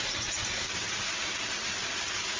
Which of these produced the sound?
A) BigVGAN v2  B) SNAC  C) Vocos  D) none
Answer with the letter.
D